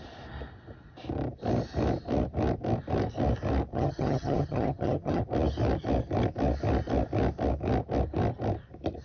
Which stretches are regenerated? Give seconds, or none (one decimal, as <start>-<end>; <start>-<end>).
3.7-5.2